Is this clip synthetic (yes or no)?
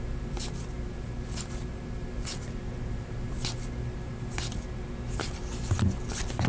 no